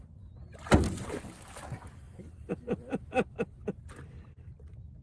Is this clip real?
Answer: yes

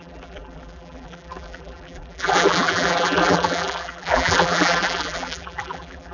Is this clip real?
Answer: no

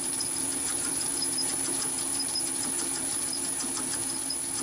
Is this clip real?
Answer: no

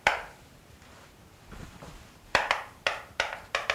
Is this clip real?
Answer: no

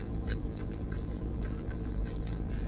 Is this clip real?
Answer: no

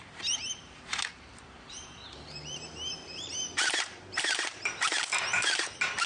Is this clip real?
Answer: no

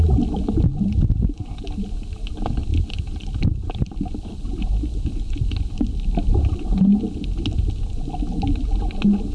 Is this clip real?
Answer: yes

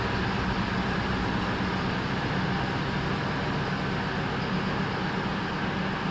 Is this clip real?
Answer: yes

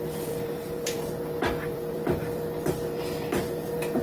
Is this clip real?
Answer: no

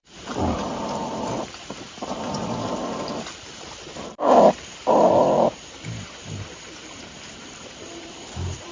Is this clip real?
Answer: no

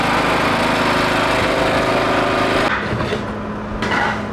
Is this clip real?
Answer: yes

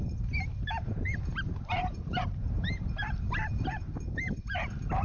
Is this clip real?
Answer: no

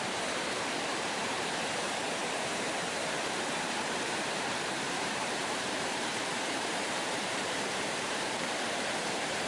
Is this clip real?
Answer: no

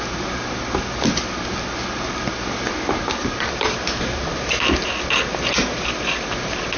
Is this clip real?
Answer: yes